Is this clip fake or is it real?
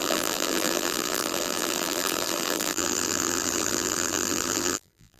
fake